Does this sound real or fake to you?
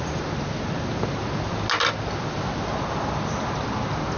real